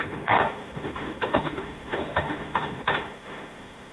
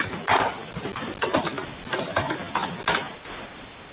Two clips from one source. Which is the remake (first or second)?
first